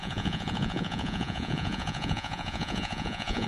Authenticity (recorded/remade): remade